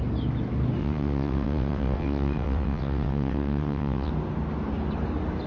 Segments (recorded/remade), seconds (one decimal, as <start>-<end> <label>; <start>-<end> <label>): 0.0-0.8 recorded; 0.8-4.1 remade; 4.1-5.5 recorded